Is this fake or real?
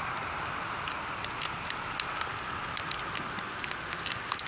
real